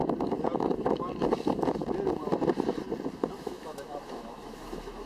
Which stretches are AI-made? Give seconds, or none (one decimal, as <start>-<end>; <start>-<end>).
0.6-1.8; 3.4-5.1